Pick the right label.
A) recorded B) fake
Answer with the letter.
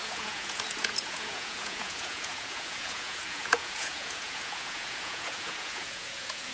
B